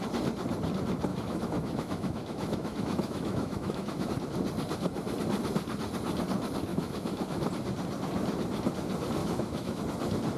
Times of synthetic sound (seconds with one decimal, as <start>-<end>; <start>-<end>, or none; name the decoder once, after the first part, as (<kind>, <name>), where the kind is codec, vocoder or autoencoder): 1.1-4.1 (autoencoder, DAC-VAE); 6.7-7.4; 9.2-9.8